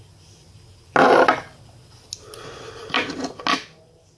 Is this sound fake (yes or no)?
no